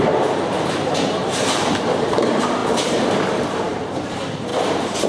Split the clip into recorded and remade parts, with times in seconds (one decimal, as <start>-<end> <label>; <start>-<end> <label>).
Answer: 0.0-5.1 remade